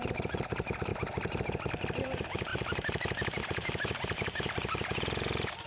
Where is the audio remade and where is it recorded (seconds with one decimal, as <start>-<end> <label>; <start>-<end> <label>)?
0.0-0.9 remade; 0.9-2.0 recorded; 2.0-5.7 remade